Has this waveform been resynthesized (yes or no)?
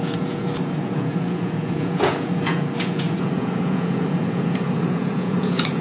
yes